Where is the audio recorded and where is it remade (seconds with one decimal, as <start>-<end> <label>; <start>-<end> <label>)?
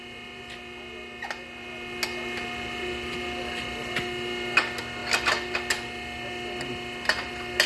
0.0-7.7 recorded